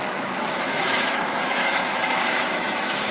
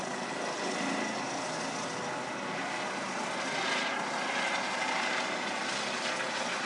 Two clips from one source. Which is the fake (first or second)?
first